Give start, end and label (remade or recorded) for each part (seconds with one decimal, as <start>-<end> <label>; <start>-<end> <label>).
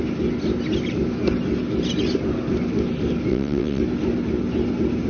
0.0-3.3 recorded; 3.3-3.8 remade; 3.8-5.1 recorded